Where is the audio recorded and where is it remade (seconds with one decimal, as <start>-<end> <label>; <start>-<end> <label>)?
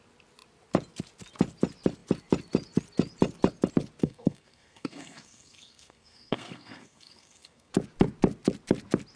0.0-4.0 recorded; 4.0-7.7 remade; 7.7-9.2 recorded